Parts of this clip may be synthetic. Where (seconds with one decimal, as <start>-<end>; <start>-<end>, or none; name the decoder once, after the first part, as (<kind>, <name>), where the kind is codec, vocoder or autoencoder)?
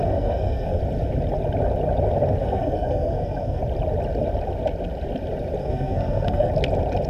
0.0-0.8 (codec, SNAC); 2.4-3.6; 5.6-6.5